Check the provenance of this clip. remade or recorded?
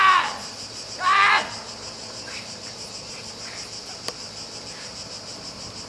recorded